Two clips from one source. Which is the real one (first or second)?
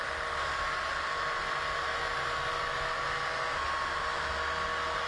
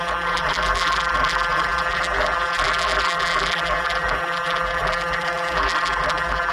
first